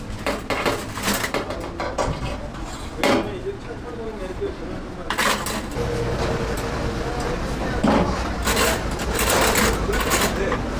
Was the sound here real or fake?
real